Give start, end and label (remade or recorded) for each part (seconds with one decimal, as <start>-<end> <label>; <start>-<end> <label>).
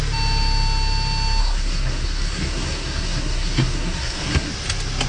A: 0.0-1.4 recorded; 1.4-4.5 remade; 4.5-5.1 recorded